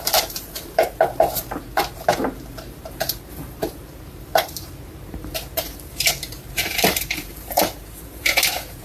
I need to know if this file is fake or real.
fake